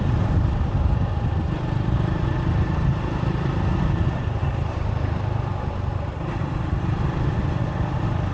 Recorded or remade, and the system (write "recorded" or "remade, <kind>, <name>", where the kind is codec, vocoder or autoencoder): remade, vocoder, BigVGAN v2